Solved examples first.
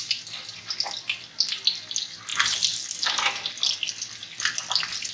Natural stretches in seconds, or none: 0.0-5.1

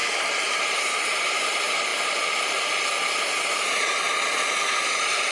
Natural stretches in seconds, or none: 1.5-5.3

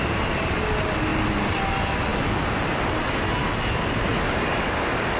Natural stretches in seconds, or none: 0.0-1.1; 1.7-4.1; 4.6-5.2